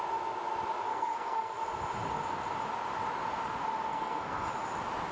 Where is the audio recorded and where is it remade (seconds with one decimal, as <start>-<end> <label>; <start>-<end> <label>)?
0.0-0.9 recorded; 0.9-1.6 remade; 1.6-3.9 recorded; 3.9-4.5 remade; 4.5-5.1 recorded